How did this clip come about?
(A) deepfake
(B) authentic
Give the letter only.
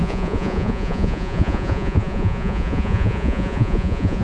A